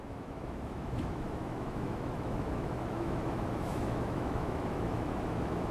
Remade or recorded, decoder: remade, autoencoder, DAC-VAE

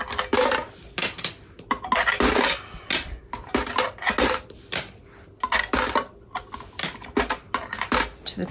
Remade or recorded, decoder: recorded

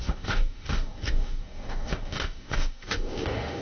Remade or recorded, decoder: remade, codec, DAC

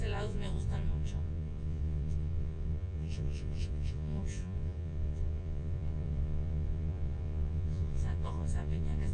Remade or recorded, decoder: remade, vocoder, Vocos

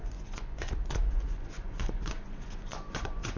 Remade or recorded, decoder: remade, vocoder, Vocos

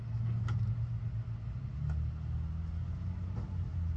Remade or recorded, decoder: recorded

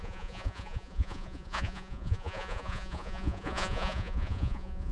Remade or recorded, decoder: remade, vocoder, Vocos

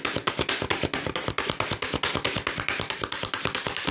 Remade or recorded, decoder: recorded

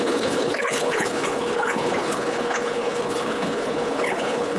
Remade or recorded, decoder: remade, codec, HILCodec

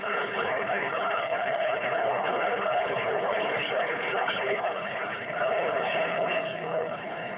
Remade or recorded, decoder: remade, codec, HILCodec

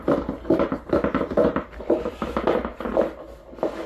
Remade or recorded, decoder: recorded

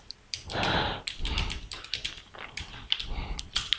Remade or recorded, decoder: remade, vocoder, BigVGAN v2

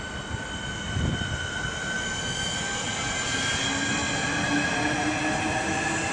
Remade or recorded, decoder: recorded